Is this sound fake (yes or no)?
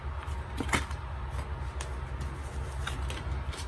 no